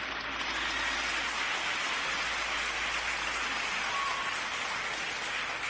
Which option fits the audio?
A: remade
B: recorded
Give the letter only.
B